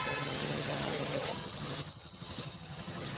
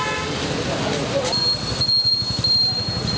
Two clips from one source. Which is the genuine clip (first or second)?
second